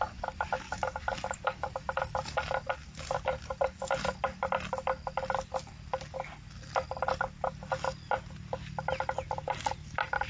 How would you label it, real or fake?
real